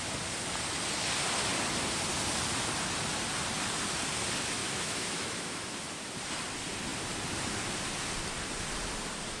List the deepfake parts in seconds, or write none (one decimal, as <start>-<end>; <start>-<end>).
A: 4.6-6.1